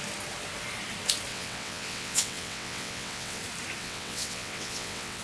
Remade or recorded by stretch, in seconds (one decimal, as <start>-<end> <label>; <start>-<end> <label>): 0.0-1.3 recorded; 1.3-3.4 remade; 3.4-3.8 recorded; 3.8-5.2 remade